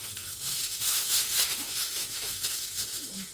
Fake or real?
fake